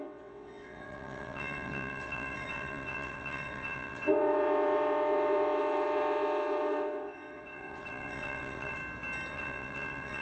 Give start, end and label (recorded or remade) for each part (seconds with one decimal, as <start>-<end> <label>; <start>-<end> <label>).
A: 0.0-8.8 remade; 8.8-9.3 recorded; 9.3-10.2 remade